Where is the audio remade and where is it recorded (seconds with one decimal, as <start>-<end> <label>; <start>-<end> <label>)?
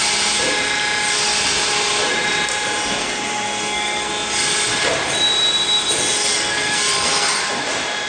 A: 0.0-3.0 recorded; 3.0-4.1 remade; 4.1-6.3 recorded; 6.3-7.4 remade; 7.4-8.1 recorded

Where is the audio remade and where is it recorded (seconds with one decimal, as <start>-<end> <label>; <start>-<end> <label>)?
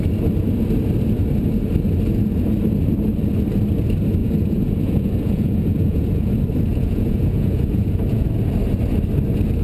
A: 0.0-4.2 recorded; 4.2-6.3 remade; 6.3-6.7 recorded; 6.7-8.3 remade; 8.3-9.6 recorded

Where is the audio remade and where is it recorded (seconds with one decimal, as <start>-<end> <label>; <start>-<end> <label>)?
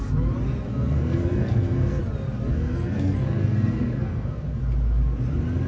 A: 0.0-0.7 recorded; 0.7-2.0 remade; 2.0-2.5 recorded; 2.5-4.6 remade; 4.6-5.7 recorded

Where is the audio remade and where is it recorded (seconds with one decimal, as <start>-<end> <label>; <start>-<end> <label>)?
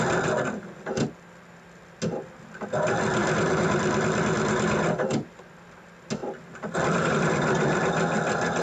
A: 0.0-3.2 recorded; 3.2-4.0 remade; 4.0-6.2 recorded; 6.2-7.8 remade; 7.8-8.6 recorded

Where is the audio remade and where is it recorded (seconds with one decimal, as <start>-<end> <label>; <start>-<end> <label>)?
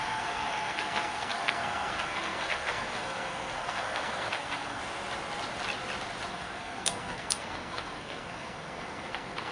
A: 0.0-4.8 remade; 4.8-6.3 recorded; 6.3-9.5 remade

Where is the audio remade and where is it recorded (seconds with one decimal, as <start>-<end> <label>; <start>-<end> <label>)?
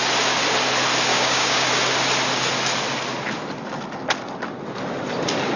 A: 0.0-1.1 recorded; 1.1-1.7 remade; 1.7-5.6 recorded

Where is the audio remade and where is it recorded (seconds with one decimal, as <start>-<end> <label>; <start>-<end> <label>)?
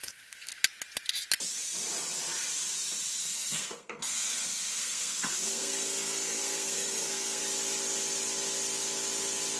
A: 0.0-0.5 remade; 0.5-3.2 recorded; 3.2-7.4 remade; 7.4-9.6 recorded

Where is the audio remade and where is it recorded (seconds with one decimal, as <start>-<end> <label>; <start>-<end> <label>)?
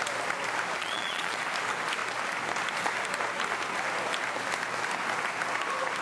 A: 0.0-0.8 recorded; 0.8-1.4 remade; 1.4-6.0 recorded